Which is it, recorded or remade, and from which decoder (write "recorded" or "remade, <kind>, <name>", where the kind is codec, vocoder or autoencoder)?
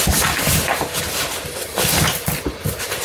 recorded